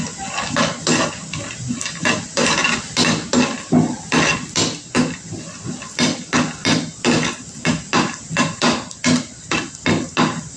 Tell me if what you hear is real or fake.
real